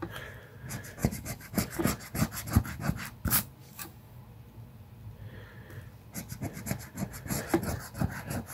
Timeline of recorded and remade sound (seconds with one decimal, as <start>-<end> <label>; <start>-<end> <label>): 0.0-1.0 recorded; 1.0-1.8 remade; 1.8-3.6 recorded; 3.6-4.2 remade; 4.2-8.5 recorded